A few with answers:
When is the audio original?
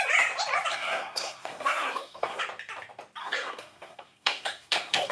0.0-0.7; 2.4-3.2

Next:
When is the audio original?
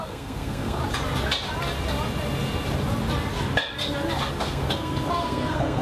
0.8-4.3